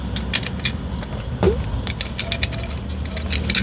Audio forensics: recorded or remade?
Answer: recorded